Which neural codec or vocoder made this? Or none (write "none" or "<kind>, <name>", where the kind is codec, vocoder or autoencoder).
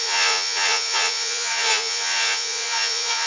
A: vocoder, Vocos